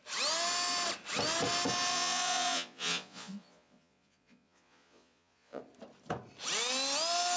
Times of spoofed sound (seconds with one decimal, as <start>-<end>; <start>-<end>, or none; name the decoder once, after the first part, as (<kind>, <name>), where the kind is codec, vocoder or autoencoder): 1.9-5.6 (vocoder, Vocos)